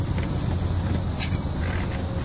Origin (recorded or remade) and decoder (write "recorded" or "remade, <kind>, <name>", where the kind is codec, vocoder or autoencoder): recorded